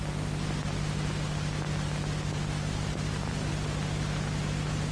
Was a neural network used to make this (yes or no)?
no